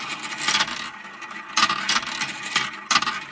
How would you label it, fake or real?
real